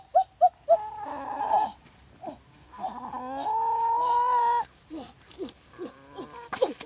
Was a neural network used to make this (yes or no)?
no